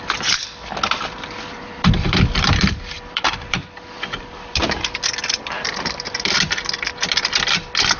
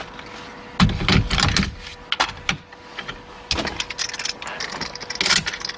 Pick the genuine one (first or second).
second